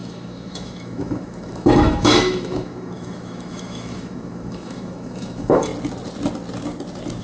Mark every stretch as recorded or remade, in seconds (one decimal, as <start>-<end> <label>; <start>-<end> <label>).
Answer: 0.0-5.7 remade; 5.7-7.2 recorded